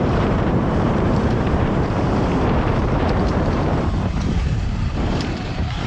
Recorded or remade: remade